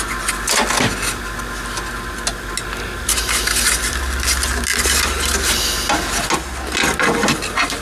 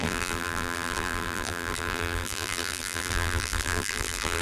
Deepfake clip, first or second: second